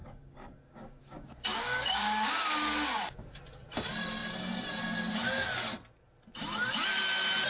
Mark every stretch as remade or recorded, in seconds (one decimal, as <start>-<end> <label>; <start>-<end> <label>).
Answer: 0.0-3.4 remade; 3.4-7.5 recorded